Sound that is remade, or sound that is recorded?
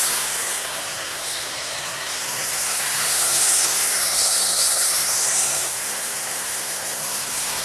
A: remade